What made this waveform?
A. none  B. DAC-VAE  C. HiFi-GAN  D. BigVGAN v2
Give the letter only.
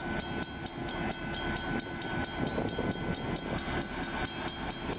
A